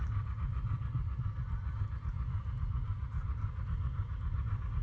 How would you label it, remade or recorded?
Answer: recorded